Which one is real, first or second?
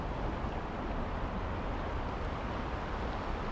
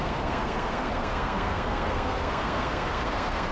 first